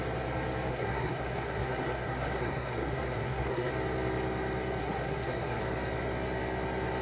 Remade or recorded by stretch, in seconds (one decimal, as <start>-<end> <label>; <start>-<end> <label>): 0.0-0.7 recorded; 0.7-3.7 remade; 3.7-4.8 recorded; 4.8-5.6 remade; 5.6-7.0 recorded